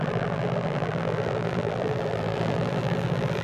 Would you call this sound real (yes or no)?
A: no